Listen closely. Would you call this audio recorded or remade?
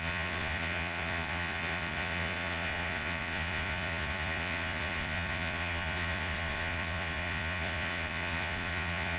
remade